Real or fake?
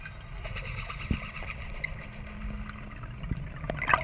real